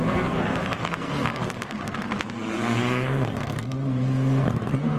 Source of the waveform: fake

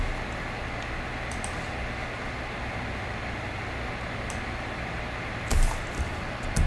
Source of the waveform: real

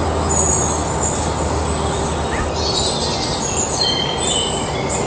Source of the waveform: real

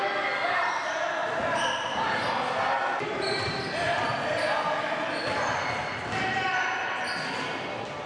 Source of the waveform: real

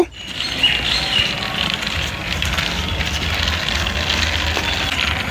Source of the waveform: real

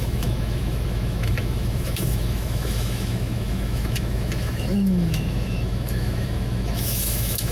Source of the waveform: fake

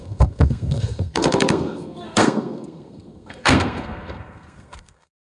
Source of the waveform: fake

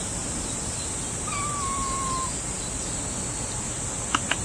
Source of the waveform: real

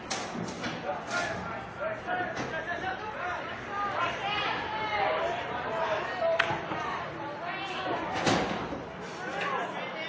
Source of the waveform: real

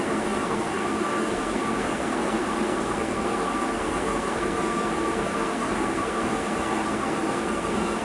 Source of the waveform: fake